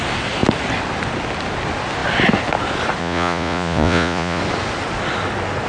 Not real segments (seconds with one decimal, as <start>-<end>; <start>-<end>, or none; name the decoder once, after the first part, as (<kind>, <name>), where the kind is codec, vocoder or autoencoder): 3.0-4.4 (vocoder, Vocos)